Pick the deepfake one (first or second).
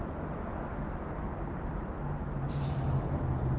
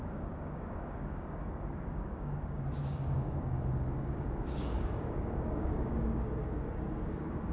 second